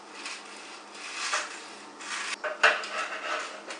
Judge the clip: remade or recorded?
recorded